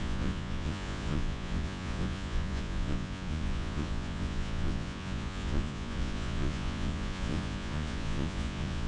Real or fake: fake